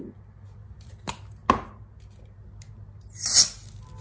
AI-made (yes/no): no